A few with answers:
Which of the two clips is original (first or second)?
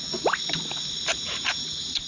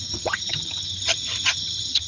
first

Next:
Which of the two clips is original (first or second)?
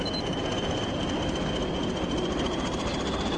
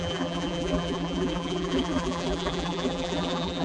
first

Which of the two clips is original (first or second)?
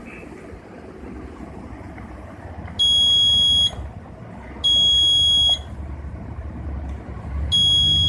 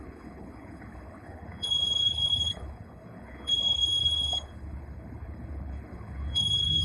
first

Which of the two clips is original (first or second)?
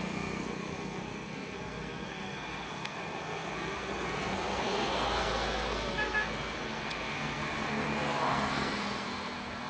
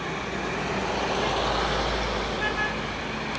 second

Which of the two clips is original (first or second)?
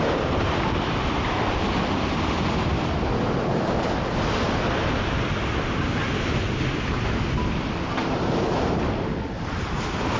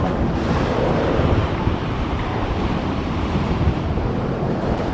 first